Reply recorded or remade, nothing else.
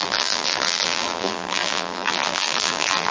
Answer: remade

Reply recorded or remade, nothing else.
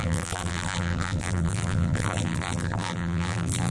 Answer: remade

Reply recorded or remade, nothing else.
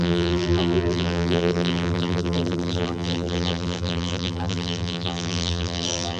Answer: remade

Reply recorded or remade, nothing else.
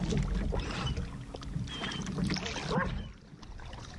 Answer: recorded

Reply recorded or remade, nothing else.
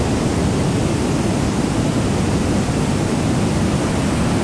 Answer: recorded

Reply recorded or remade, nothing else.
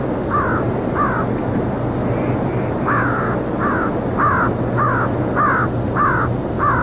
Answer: recorded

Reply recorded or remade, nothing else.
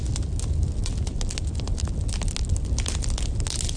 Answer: recorded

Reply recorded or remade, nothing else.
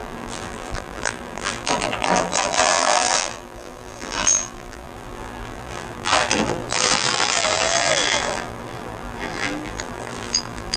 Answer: remade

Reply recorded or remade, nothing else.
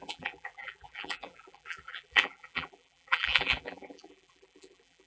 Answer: remade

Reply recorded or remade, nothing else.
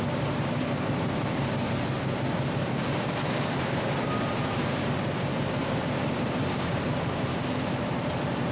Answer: remade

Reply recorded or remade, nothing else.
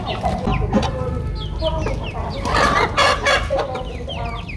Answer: recorded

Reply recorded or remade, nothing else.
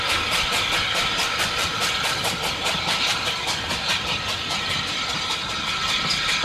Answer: remade